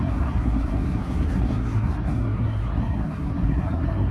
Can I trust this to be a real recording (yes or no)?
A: no